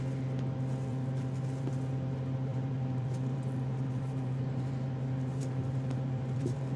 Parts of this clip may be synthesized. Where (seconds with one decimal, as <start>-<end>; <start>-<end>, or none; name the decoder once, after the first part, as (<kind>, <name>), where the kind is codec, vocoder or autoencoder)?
0.9-1.7 (vocoder, BigVGAN v2); 2.5-6.8